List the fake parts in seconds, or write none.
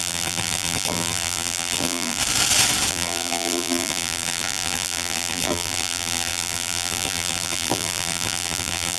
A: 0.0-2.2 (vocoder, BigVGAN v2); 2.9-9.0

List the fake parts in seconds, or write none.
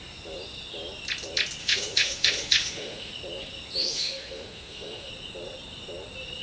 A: 1.6-3.1 (autoencoder, DAC-VAE); 3.8-5.1